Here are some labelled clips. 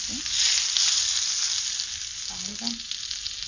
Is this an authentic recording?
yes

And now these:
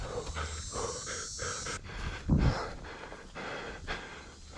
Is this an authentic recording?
yes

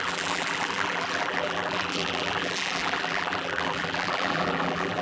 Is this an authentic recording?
no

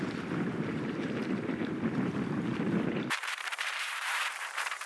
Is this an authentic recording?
no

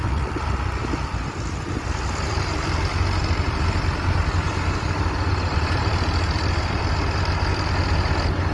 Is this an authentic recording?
no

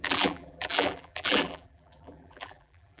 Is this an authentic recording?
no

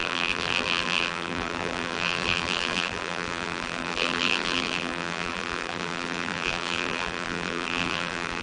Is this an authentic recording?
no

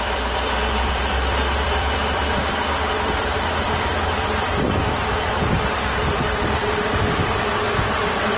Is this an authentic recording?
no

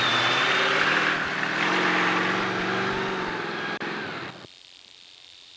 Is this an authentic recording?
no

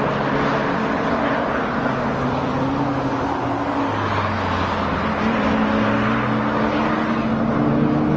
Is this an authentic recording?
yes